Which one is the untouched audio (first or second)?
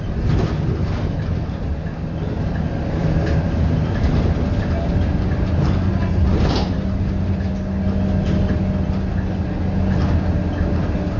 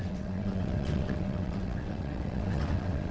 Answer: first